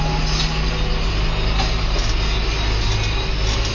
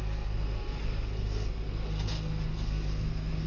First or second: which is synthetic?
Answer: second